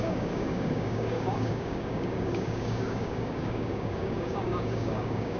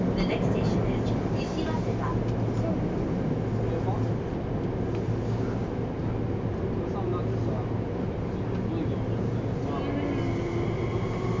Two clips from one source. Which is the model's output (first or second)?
first